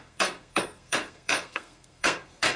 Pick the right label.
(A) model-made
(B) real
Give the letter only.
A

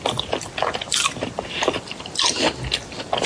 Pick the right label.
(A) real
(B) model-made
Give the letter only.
A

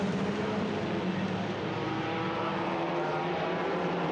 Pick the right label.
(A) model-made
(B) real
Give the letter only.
A